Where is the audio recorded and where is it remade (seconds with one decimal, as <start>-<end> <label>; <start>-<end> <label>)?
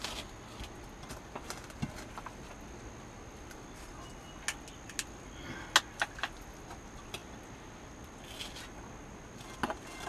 0.0-10.1 recorded